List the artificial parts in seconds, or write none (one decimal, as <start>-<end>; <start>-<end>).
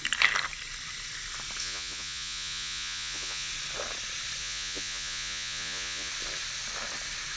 1.6-3.5; 4.4-6.1